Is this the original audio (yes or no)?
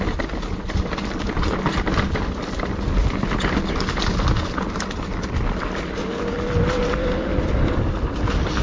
yes